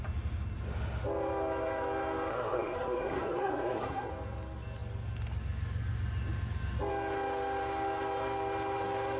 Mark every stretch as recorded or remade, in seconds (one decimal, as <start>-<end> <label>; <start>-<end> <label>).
0.0-2.3 recorded; 2.3-4.1 remade; 4.1-9.2 recorded